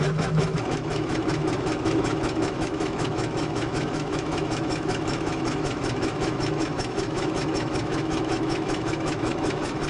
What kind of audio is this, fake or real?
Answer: fake